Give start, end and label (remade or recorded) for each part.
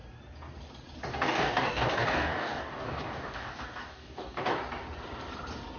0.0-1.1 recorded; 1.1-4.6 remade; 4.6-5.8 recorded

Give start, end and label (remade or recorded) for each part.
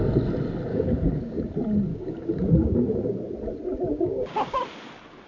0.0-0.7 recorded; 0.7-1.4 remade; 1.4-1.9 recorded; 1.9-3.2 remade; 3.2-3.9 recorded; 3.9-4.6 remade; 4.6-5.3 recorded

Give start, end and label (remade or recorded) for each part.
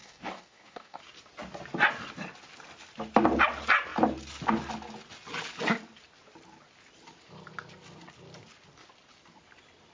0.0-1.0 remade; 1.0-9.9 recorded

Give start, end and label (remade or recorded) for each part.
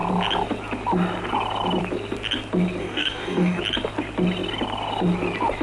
0.0-2.8 recorded; 2.8-3.6 remade; 3.6-5.6 recorded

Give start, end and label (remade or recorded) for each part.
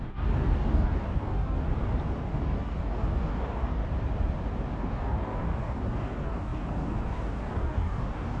0.0-1.7 remade; 1.7-2.2 recorded; 2.2-3.8 remade; 3.8-4.8 recorded; 4.8-8.4 remade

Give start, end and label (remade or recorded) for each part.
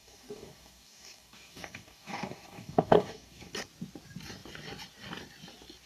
0.0-3.5 remade; 3.5-5.9 recorded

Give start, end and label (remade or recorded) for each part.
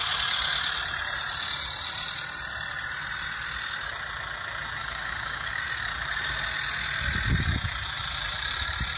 0.0-4.8 recorded; 4.8-5.6 remade; 5.6-9.0 recorded